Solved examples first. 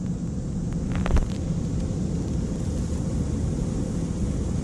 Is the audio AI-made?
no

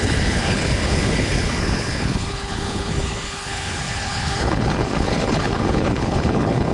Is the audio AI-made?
yes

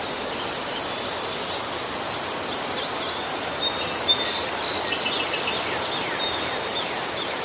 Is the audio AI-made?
no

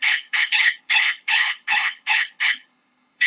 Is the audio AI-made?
yes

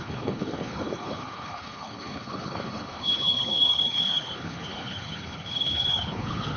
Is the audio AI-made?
yes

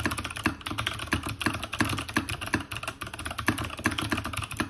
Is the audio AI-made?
no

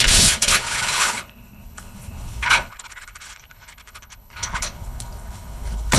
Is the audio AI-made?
yes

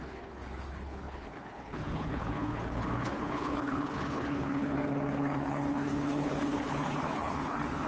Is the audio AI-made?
yes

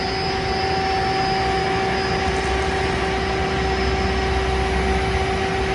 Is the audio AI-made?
no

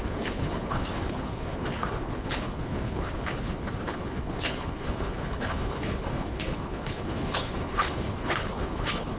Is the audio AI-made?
yes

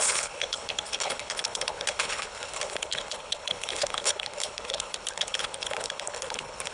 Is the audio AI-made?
yes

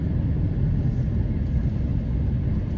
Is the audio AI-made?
no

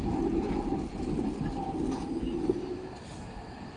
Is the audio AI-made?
no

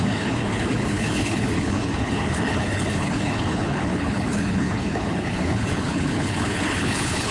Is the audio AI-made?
yes